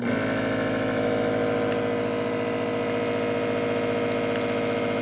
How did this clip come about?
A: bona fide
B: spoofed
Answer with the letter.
A